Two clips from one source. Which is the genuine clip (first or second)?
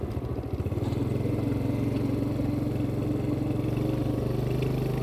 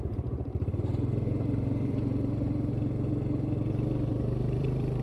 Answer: first